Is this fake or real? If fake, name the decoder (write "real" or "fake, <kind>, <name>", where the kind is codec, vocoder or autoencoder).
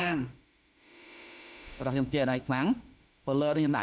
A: fake, autoencoder, DAC-VAE